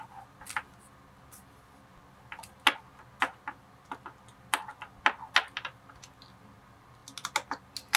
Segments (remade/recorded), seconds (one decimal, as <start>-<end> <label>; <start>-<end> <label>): 0.0-8.0 recorded